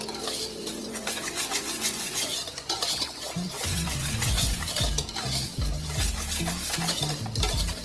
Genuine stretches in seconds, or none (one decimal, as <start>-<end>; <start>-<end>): 0.0-0.6; 4.6-7.8